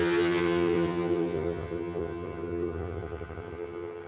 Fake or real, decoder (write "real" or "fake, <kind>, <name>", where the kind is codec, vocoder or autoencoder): fake, vocoder, HiFi-GAN